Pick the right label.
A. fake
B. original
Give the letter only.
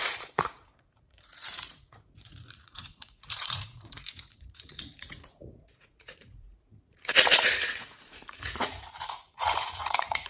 A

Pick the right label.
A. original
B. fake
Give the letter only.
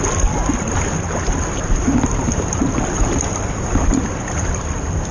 A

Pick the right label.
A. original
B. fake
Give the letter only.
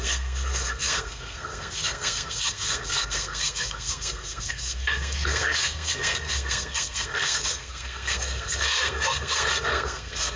B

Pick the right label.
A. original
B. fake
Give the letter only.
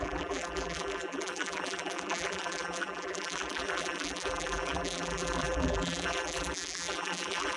B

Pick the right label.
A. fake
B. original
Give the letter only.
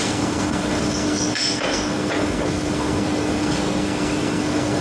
A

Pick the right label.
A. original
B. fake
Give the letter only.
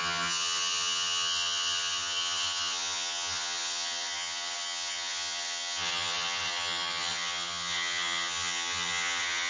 B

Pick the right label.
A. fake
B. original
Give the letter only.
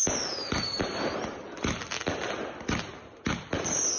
B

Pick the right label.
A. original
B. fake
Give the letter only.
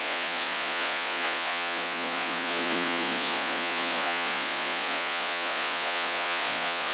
B